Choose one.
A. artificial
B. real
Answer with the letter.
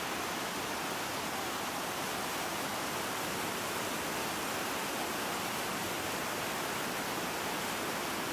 B